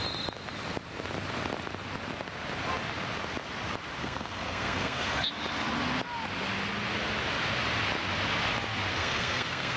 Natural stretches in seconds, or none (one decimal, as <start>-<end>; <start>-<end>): 0.0-4.0; 5.3-8.9